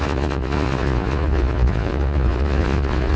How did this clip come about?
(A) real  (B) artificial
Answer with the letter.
B